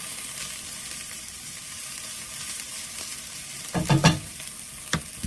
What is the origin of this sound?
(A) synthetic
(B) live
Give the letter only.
B